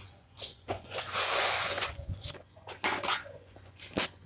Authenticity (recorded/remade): remade